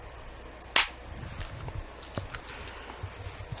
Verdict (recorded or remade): recorded